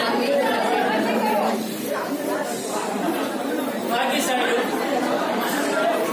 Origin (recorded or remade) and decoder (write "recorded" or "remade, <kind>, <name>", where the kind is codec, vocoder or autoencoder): remade, vocoder, BigVGAN v2